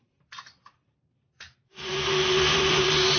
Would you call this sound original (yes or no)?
no